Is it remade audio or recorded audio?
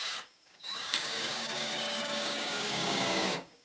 remade